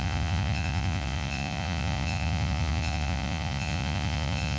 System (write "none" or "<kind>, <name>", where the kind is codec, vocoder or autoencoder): vocoder, Vocos